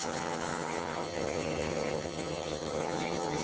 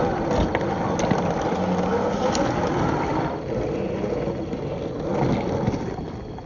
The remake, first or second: first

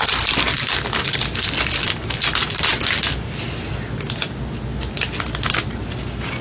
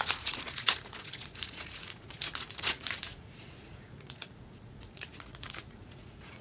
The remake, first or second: second